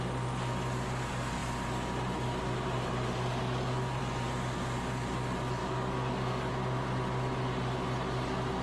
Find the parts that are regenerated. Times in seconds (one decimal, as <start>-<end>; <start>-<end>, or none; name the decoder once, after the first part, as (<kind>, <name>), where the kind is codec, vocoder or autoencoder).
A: 5.6-6.5 (codec, DAC)